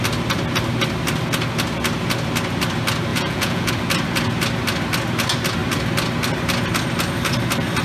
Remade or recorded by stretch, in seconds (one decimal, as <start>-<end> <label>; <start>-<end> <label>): 0.0-3.1 recorded; 3.1-3.7 remade; 3.7-7.8 recorded